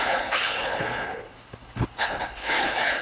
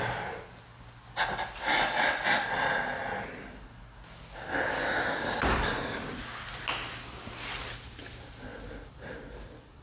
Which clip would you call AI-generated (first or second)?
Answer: first